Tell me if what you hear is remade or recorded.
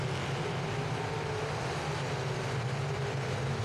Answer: recorded